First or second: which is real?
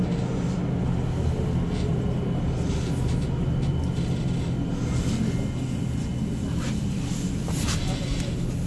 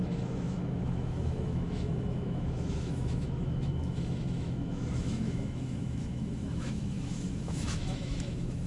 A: first